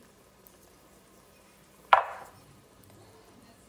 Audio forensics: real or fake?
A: fake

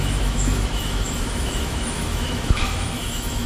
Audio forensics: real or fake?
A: fake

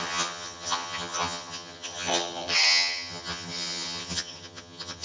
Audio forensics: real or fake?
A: fake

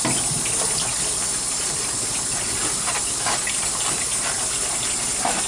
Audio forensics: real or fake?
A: real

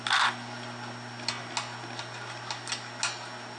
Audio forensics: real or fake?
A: real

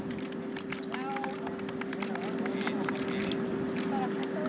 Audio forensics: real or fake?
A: real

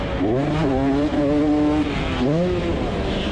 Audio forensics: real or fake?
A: real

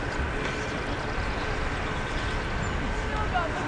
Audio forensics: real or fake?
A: real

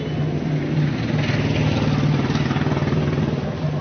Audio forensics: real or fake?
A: real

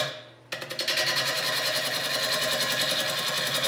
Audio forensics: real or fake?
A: real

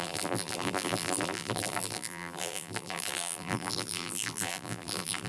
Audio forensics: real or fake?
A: fake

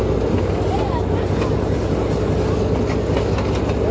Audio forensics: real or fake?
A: real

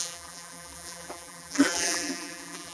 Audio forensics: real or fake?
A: fake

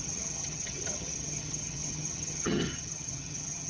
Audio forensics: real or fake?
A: fake